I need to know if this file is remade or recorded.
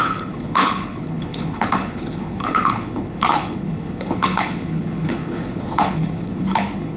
remade